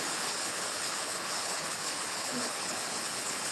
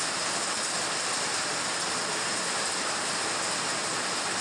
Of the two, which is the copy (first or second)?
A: first